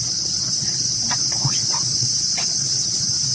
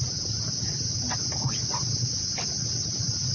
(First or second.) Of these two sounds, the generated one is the first